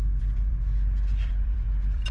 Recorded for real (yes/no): yes